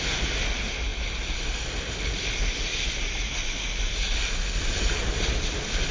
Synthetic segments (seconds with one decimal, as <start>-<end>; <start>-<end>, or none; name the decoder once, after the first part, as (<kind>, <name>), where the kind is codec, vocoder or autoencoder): none